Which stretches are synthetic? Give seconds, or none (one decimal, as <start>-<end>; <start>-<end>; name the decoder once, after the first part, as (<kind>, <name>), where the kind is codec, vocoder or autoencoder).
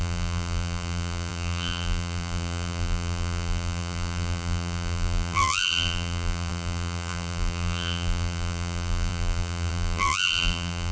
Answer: 0.0-10.9 (vocoder, BigVGAN v2)